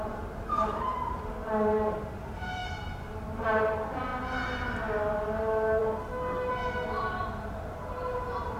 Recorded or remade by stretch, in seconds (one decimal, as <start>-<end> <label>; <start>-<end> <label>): 0.0-1.3 remade; 1.3-2.2 recorded; 2.2-2.6 remade; 2.6-3.2 recorded; 3.2-4.1 remade; 4.1-5.1 recorded; 5.1-5.8 remade; 5.8-6.5 recorded; 6.5-8.6 remade